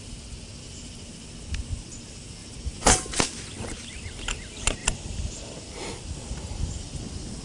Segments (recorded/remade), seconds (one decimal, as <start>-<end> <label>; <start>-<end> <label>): 0.0-7.4 recorded